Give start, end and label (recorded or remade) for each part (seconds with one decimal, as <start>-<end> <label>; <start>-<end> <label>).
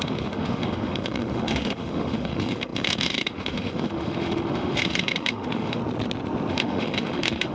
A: 0.0-5.8 remade; 5.8-6.5 recorded; 6.5-7.5 remade